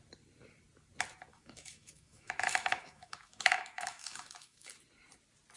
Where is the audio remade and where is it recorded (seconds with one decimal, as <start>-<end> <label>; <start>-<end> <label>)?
0.0-1.3 recorded; 1.3-4.7 remade; 4.7-5.6 recorded